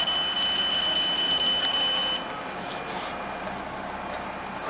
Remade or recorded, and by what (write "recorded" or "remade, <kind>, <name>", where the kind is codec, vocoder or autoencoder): recorded